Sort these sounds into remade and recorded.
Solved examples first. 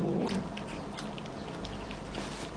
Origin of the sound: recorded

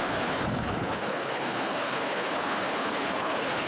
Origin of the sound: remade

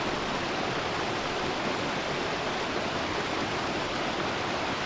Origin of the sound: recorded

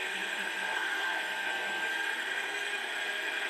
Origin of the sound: remade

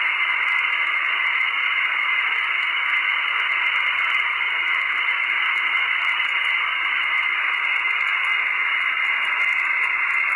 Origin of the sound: recorded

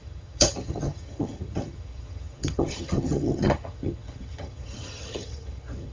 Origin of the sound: remade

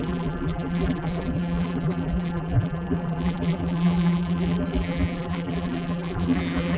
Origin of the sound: remade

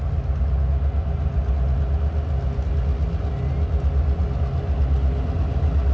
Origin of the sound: recorded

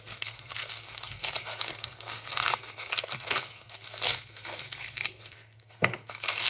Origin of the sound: remade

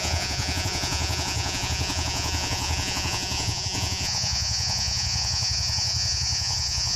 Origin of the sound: remade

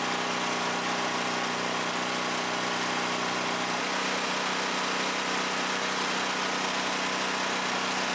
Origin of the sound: recorded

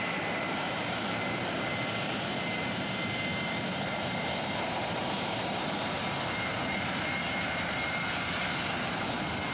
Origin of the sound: remade